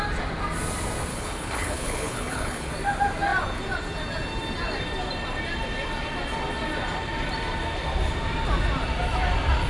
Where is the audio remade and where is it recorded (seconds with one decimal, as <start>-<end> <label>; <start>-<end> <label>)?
0.0-1.1 recorded; 1.1-2.7 remade; 2.7-9.7 recorded

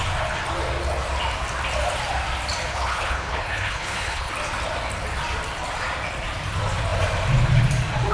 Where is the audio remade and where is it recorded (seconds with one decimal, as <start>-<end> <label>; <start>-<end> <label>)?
0.0-2.7 recorded; 2.7-4.3 remade; 4.3-8.1 recorded

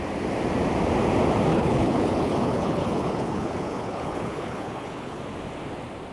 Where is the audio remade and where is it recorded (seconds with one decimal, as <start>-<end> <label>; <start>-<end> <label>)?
0.0-1.5 recorded; 1.5-5.2 remade; 5.2-6.1 recorded

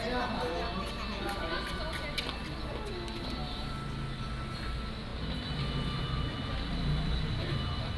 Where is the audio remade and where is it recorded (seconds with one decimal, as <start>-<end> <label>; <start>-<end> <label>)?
0.0-8.0 recorded

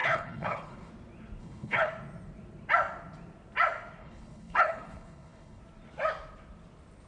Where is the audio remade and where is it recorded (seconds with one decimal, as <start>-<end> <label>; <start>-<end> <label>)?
0.0-0.9 remade; 0.9-1.4 recorded; 1.4-1.9 remade; 1.9-4.0 recorded; 4.0-5.6 remade; 5.6-7.1 recorded

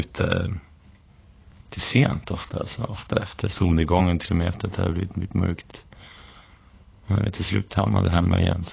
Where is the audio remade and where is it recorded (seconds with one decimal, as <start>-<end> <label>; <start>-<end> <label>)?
0.0-0.4 recorded; 0.4-1.1 remade; 1.1-1.5 recorded; 1.5-4.0 remade; 4.0-5.7 recorded; 5.7-8.7 remade